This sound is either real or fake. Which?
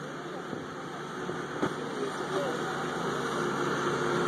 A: real